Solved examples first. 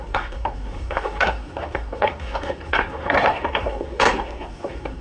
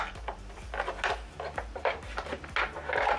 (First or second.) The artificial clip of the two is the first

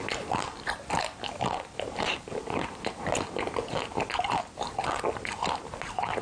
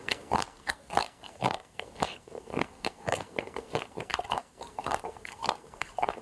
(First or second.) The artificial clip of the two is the second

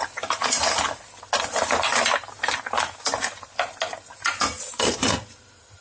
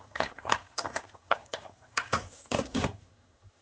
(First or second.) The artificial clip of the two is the second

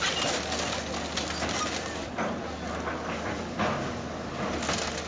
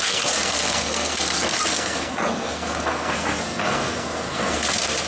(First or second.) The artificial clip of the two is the second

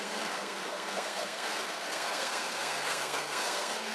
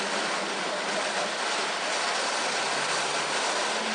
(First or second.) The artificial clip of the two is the first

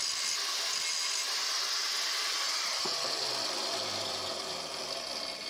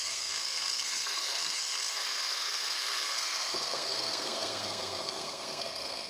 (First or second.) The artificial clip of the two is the second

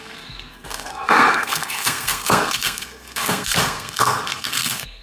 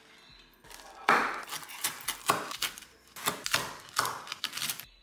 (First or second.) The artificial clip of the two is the first